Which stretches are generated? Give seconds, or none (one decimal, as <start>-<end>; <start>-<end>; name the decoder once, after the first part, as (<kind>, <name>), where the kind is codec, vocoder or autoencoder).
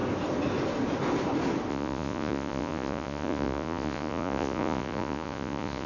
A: 1.7-5.9 (vocoder, Vocos)